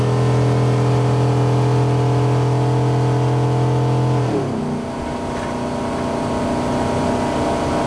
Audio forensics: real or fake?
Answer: real